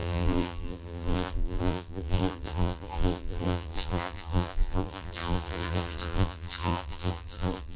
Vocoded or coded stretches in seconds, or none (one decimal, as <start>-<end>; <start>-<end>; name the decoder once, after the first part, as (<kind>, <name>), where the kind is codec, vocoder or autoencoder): 0.0-7.8 (vocoder, BigVGAN v2)

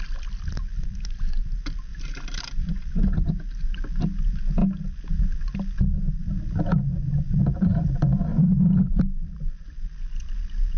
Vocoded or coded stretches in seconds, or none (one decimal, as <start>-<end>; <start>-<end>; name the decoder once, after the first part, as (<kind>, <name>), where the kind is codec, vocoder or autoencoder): 1.9-2.7 (vocoder, BigVGAN v2)